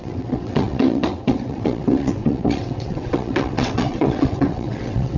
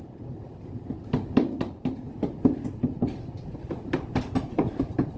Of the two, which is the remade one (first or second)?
first